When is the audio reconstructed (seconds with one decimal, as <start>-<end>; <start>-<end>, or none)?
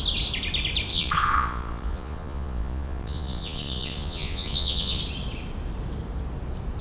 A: 0.9-5.0